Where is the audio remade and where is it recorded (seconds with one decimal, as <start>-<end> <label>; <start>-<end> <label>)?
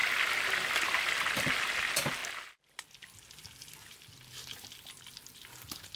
0.0-6.0 recorded